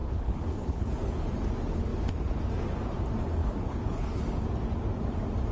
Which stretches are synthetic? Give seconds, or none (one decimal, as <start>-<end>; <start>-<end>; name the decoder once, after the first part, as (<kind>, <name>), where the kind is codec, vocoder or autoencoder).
0.0-1.3 (codec, HILCodec); 3.4-4.2

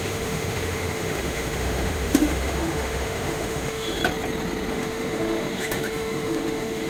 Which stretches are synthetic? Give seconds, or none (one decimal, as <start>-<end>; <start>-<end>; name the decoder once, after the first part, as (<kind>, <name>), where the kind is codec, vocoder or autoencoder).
0.0-4.0 (autoencoder, DAC-VAE); 4.7-6.9

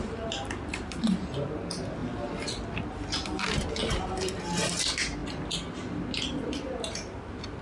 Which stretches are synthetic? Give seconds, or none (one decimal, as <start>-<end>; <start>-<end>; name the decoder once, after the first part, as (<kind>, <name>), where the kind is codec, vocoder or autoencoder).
none

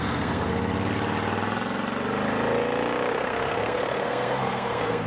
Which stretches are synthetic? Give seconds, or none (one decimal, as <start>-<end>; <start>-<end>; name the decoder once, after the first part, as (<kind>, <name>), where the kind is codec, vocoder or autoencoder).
0.0-0.5 (codec, SNAC); 3.1-5.1

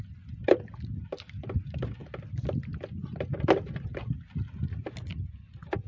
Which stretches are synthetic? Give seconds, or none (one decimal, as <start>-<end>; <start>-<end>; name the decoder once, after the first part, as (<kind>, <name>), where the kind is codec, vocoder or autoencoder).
none

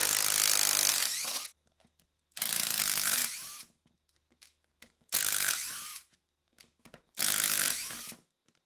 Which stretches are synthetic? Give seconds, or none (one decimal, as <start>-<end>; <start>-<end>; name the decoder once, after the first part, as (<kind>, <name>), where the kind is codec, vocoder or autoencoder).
0.9-8.7 (autoencoder, DAC-VAE)

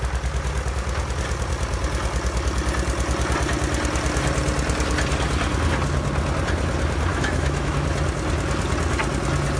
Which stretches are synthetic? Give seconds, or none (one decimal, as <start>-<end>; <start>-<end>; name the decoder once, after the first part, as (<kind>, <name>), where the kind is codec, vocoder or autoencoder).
7.1-7.7 (autoencoder, DAC-VAE)